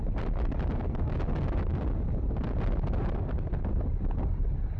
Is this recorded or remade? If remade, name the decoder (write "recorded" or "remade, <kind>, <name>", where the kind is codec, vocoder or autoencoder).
recorded